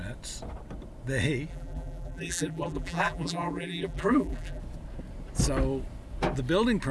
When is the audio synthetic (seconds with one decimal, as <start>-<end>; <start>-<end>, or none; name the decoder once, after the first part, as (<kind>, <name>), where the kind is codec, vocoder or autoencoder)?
1.5-4.6 (vocoder, BigVGAN v2)